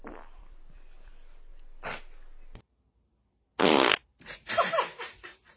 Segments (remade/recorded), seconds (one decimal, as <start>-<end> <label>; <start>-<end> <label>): 0.0-1.5 remade; 1.5-3.6 recorded; 3.6-4.0 remade; 4.0-4.6 recorded; 4.6-5.6 remade